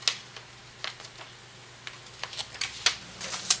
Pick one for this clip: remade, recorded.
recorded